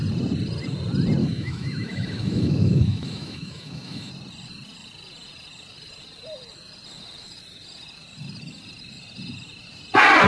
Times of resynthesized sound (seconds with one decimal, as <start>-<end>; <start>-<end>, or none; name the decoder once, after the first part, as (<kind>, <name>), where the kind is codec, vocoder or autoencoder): 1.2-4.1 (autoencoder, DAC-VAE)

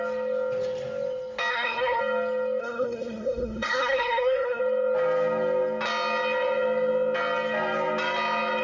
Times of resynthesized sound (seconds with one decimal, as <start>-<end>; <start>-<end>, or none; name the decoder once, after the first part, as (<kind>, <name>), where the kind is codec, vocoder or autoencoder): 1.5-2.0 (codec, SNAC); 2.6-4.6